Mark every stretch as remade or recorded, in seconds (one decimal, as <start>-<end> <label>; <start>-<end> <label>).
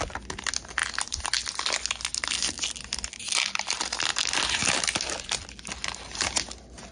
0.0-6.9 recorded